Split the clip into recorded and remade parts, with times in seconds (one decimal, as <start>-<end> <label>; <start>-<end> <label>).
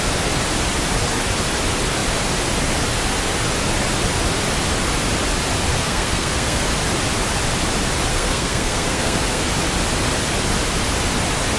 0.0-5.7 recorded; 5.7-6.6 remade; 6.6-8.1 recorded; 8.1-9.4 remade; 9.4-11.6 recorded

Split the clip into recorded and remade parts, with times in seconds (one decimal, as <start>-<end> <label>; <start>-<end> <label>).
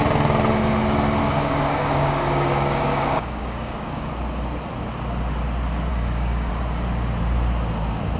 0.0-1.2 recorded; 1.2-4.1 remade; 4.1-5.9 recorded; 5.9-6.5 remade; 6.5-8.2 recorded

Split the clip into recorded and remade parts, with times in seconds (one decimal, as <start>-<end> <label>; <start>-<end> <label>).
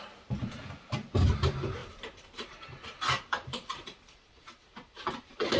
0.0-1.8 recorded; 1.8-5.1 remade; 5.1-5.6 recorded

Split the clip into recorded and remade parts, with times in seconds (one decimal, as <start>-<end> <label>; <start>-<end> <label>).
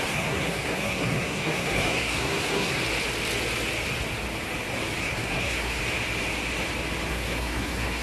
0.0-2.8 remade; 2.8-5.0 recorded; 5.0-5.8 remade; 5.8-7.1 recorded; 7.1-8.0 remade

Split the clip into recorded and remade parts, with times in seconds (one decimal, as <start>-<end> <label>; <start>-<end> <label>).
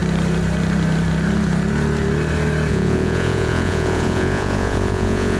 0.0-2.7 recorded; 2.7-5.4 remade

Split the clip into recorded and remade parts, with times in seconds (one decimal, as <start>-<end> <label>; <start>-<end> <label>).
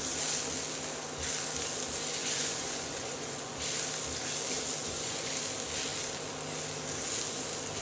0.0-2.2 recorded; 2.2-3.6 remade; 3.6-4.8 recorded; 4.8-5.3 remade; 5.3-7.8 recorded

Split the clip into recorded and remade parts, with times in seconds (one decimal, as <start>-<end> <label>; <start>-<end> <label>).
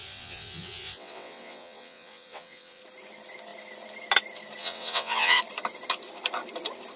0.0-2.8 remade; 2.8-4.6 recorded; 4.6-5.4 remade; 5.4-7.0 recorded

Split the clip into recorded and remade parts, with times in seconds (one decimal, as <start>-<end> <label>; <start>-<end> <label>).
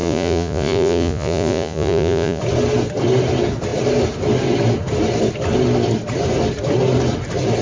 0.0-2.4 remade; 2.4-7.6 recorded